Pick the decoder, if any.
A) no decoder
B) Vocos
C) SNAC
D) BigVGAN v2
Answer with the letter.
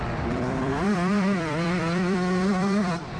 D